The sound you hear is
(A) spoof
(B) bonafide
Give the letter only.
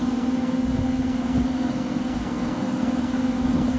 A